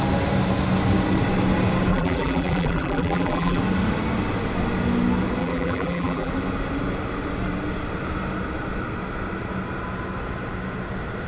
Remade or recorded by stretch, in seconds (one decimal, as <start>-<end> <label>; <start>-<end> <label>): 0.0-1.9 recorded; 1.9-3.6 remade; 3.6-5.4 recorded; 5.4-6.3 remade; 6.3-11.3 recorded